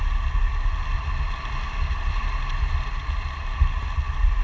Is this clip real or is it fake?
real